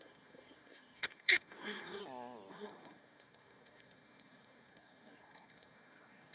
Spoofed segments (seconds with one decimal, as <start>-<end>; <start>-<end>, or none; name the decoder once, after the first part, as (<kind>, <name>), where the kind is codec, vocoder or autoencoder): 0.0-2.0 (codec, SNAC); 2.5-6.3